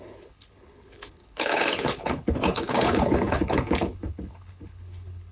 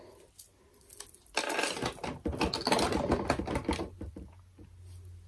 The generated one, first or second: first